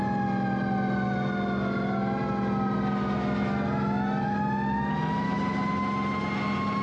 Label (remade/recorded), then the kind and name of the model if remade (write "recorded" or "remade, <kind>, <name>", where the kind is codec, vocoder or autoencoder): recorded